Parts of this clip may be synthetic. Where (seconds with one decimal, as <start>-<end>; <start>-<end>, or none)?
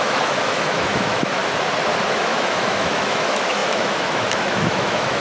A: 0.0-1.4; 2.1-5.2